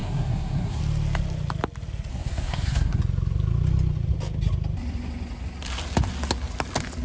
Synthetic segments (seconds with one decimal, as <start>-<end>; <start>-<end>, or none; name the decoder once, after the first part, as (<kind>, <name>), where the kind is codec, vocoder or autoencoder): 0.0-0.8 (codec, SNAC); 2.1-3.0